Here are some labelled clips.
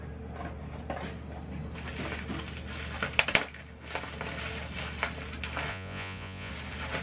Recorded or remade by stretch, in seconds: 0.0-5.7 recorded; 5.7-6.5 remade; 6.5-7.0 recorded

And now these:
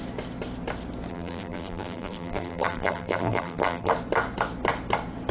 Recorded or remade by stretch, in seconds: 0.0-1.1 recorded; 1.1-3.9 remade; 3.9-5.3 recorded

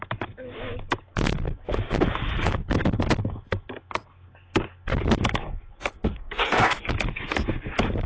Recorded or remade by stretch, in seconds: 0.0-6.1 recorded; 6.1-6.8 remade; 6.8-8.1 recorded

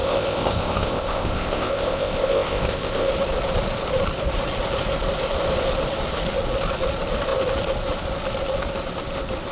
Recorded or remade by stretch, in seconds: 0.0-3.1 remade; 3.1-9.5 recorded

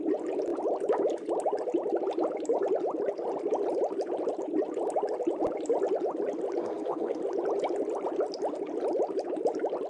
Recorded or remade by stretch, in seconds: 0.0-6.6 recorded; 6.6-7.2 remade; 7.2-9.9 recorded

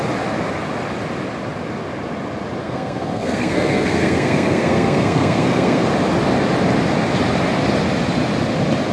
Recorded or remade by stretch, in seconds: 0.0-2.6 recorded; 2.6-5.9 remade; 5.9-8.9 recorded